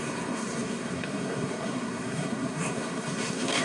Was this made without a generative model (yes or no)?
no